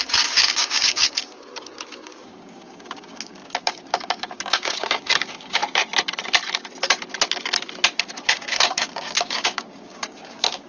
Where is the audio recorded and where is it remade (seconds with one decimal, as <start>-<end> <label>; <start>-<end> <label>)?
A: 0.0-5.6 remade; 5.6-8.2 recorded; 8.2-10.7 remade